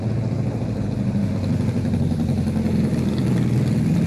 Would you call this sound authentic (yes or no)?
yes